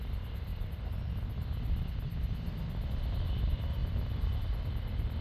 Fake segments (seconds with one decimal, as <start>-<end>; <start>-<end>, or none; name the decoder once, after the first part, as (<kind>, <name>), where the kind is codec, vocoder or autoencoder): none